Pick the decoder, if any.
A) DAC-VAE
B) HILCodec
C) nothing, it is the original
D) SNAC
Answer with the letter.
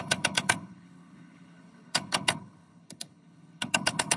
B